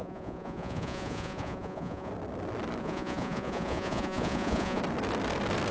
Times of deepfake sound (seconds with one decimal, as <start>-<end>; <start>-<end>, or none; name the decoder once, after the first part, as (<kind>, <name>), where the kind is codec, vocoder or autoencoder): 0.0-2.1 (vocoder, Vocos); 2.8-4.8